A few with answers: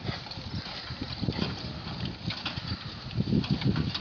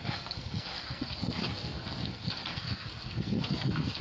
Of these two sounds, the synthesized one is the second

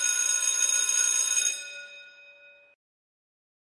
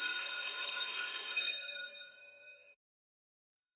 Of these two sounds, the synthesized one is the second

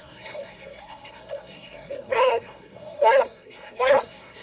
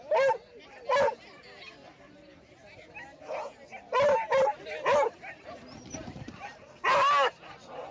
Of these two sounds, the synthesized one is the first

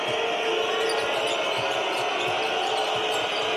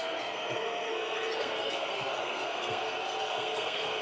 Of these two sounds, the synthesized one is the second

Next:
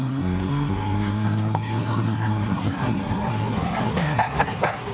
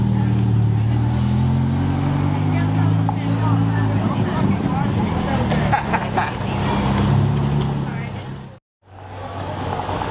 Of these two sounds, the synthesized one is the first